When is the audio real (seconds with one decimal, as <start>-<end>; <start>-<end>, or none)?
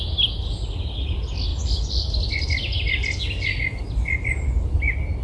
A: 0.0-5.2